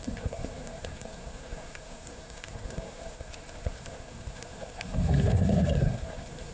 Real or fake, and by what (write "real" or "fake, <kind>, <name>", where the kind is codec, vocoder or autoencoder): fake, codec, SNAC